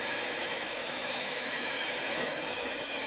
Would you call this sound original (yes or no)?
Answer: no